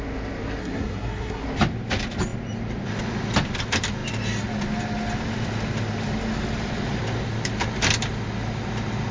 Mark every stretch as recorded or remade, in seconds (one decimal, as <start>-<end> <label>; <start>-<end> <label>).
0.0-0.6 recorded; 0.6-1.4 remade; 1.4-9.1 recorded